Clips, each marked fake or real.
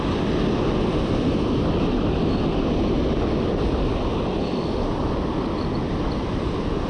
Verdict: real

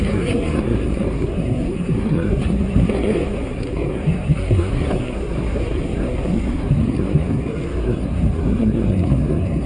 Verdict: fake